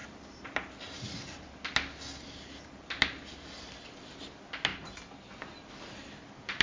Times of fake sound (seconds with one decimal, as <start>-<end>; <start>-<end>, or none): none